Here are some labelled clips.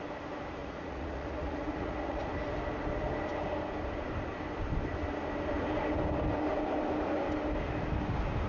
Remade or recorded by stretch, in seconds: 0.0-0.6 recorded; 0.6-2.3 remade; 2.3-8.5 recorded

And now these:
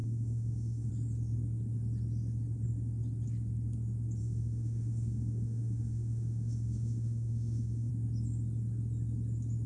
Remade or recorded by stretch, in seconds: 0.0-0.9 remade; 0.9-4.2 recorded; 4.2-7.9 remade; 7.9-9.7 recorded

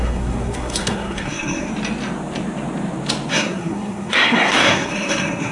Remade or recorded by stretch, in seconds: 0.0-1.7 remade; 1.7-3.3 recorded; 3.3-5.5 remade

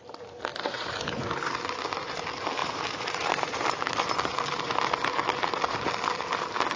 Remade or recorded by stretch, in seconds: 0.0-0.5 recorded; 0.5-1.5 remade; 1.5-2.6 recorded; 2.6-3.6 remade; 3.6-6.8 recorded

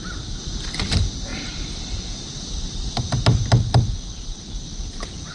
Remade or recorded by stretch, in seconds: 0.0-4.1 recorded; 4.1-5.3 remade

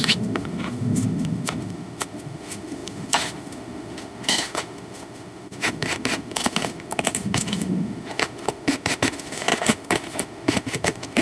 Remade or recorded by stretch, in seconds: 0.0-11.2 remade

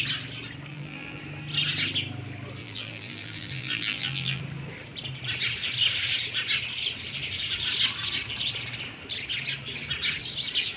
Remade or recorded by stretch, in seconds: 0.0-0.7 recorded; 0.7-1.2 remade; 1.2-2.6 recorded; 2.6-4.4 remade; 4.4-10.8 recorded

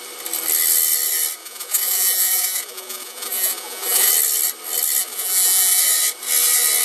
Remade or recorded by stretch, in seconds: 0.0-1.4 recorded; 1.4-4.1 remade; 4.1-5.0 recorded; 5.0-5.8 remade; 5.8-6.8 recorded